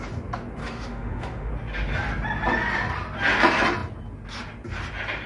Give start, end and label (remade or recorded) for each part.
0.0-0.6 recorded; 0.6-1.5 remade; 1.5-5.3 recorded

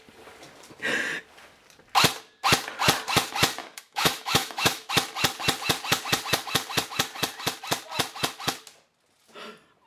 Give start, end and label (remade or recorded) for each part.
0.0-3.6 recorded; 3.6-4.9 remade; 4.9-9.9 recorded

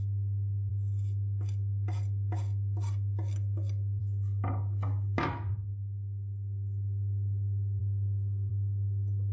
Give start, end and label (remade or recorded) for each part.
0.0-7.8 recorded; 7.8-8.5 remade; 8.5-9.3 recorded

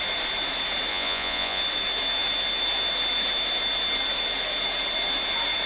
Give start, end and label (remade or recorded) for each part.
0.0-0.9 recorded; 0.9-1.6 remade; 1.6-5.7 recorded

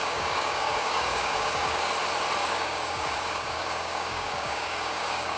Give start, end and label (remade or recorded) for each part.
0.0-1.9 remade; 1.9-2.4 recorded; 2.4-5.4 remade

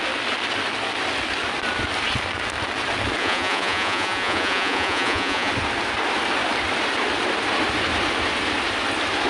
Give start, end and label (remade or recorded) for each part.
0.0-3.2 recorded; 3.2-5.5 remade; 5.5-9.3 recorded

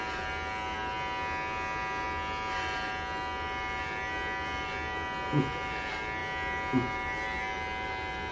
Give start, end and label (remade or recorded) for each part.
0.0-8.3 recorded